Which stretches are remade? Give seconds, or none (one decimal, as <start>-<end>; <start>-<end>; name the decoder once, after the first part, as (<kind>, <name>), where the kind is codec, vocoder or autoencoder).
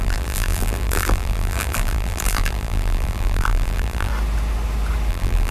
0.0-4.1 (vocoder, BigVGAN v2); 5.1-5.5